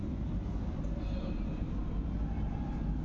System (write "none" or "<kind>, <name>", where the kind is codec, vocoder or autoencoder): none